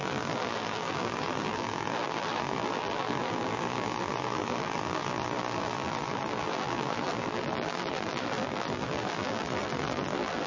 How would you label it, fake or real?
fake